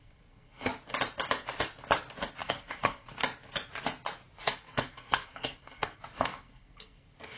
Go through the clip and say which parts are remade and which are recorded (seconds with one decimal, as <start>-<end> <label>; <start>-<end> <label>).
0.0-0.7 remade; 0.7-2.4 recorded; 2.4-3.2 remade; 3.2-4.4 recorded; 4.4-7.4 remade